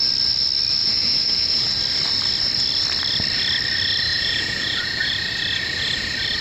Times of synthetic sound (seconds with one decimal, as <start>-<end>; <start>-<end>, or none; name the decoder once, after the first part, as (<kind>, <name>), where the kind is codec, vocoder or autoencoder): 0.8-1.7 (vocoder, Vocos); 4.1-5.1